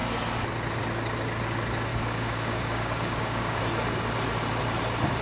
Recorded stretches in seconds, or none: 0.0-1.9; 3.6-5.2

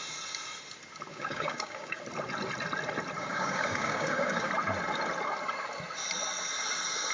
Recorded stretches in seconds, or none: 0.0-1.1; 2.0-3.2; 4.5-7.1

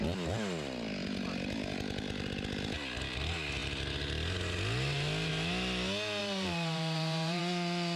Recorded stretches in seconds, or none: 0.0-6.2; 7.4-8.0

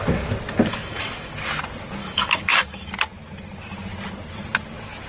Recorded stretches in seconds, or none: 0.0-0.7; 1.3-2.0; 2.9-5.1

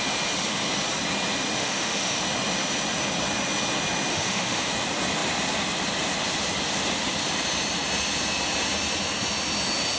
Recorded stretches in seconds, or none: 0.0-1.6; 2.2-4.1; 4.7-10.0